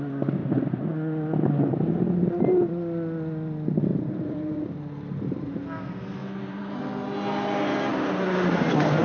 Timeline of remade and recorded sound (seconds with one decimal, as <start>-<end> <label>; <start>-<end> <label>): 0.0-3.9 recorded; 3.9-5.4 remade; 5.4-6.2 recorded; 6.2-6.8 remade; 6.8-9.0 recorded